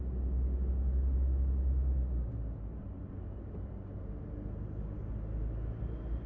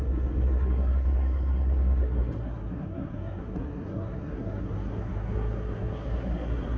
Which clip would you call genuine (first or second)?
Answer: first